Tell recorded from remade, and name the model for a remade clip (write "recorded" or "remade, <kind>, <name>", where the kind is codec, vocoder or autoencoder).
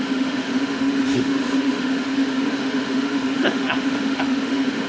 remade, autoencoder, DAC-VAE